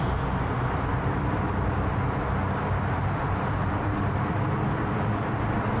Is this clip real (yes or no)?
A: no